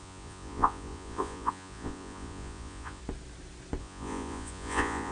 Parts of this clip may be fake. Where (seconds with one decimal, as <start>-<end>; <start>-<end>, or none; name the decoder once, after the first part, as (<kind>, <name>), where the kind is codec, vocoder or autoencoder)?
0.0-3.0 (vocoder, Vocos); 3.8-5.1